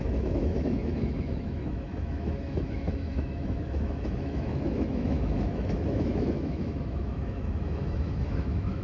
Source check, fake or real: fake